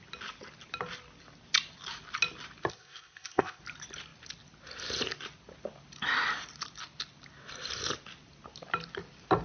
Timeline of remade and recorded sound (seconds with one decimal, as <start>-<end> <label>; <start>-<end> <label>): 0.0-2.7 recorded; 2.7-3.6 remade; 3.6-9.4 recorded